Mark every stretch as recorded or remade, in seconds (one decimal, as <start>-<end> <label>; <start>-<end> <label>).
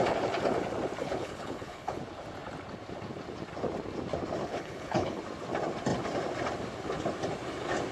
0.0-1.0 recorded; 1.0-2.0 remade; 2.0-4.4 recorded; 4.4-5.2 remade; 5.2-7.9 recorded